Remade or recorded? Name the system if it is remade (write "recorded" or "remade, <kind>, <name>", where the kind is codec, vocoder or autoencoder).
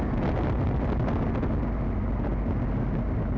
recorded